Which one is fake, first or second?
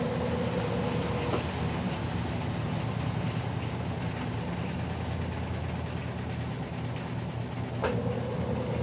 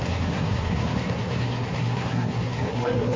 second